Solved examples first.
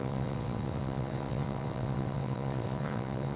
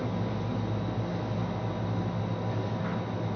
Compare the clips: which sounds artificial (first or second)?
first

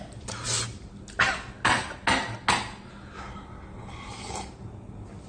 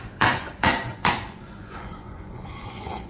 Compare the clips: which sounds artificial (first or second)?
second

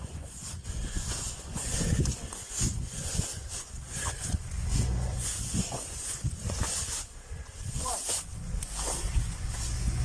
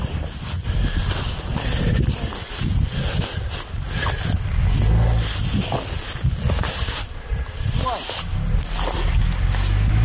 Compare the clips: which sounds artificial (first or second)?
first